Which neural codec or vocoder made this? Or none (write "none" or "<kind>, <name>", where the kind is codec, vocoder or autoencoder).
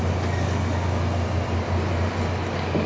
none